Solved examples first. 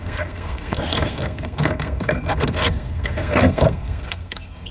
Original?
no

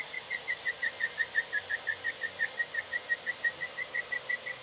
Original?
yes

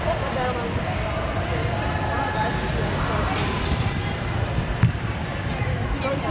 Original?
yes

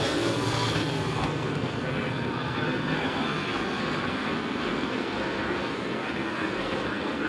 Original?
no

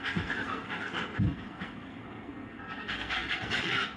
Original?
no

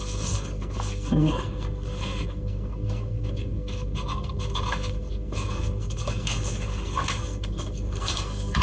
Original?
no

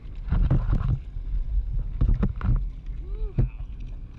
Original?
yes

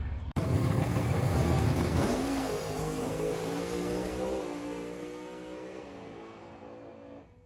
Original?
no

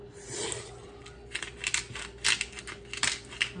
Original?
yes